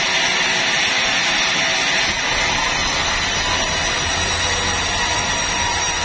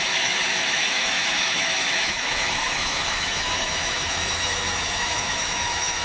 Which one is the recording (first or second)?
first